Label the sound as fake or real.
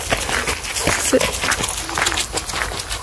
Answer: real